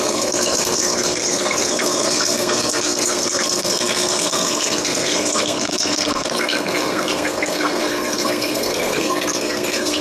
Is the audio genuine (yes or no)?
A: no